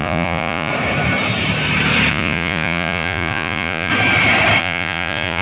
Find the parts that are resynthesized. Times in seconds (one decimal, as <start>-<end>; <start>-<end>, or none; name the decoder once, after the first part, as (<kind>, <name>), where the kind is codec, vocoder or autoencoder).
0.0-0.7 (vocoder, Vocos); 2.1-3.9; 4.6-5.4